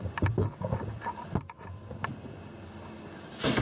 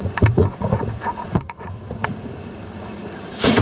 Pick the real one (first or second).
first